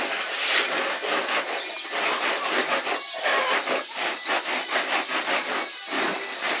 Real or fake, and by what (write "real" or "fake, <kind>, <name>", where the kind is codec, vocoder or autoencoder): real